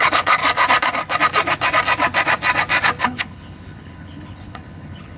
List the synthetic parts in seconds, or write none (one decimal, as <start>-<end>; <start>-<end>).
0.0-0.4; 3.0-5.2